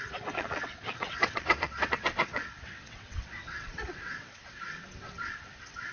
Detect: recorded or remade remade